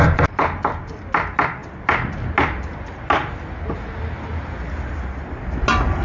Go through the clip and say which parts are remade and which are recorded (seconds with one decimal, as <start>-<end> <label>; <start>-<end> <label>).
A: 0.0-6.0 recorded